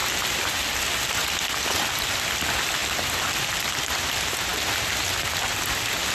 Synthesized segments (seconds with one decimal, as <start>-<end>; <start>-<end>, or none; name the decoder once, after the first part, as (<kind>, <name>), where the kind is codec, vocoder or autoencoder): none